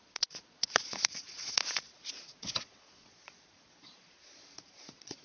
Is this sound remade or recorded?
remade